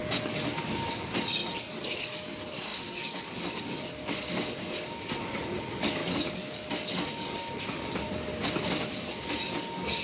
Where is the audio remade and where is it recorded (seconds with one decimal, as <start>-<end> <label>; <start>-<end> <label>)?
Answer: 0.0-8.3 remade; 8.3-9.5 recorded; 9.5-10.0 remade